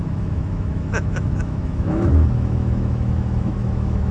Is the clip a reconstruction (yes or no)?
yes